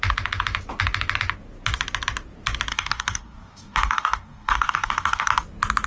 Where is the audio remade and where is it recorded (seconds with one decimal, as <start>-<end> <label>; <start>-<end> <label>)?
0.0-2.7 recorded; 2.7-5.3 remade; 5.3-5.9 recorded